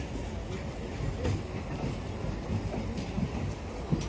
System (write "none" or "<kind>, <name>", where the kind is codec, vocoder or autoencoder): none